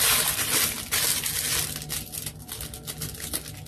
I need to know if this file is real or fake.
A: real